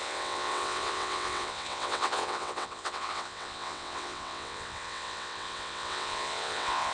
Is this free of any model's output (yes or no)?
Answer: no